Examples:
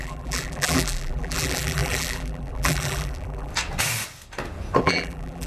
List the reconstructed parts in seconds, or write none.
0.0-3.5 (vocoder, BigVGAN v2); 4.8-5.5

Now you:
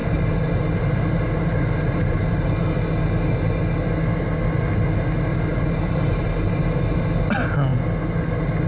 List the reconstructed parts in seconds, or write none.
0.0-2.6 (vocoder, BigVGAN v2); 5.3-6.5

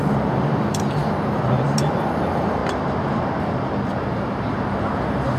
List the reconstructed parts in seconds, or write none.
0.0-2.6 (vocoder, BigVGAN v2)